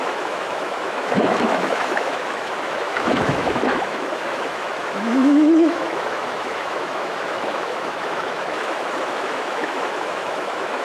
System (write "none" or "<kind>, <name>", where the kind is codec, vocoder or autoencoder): autoencoder, DAC-VAE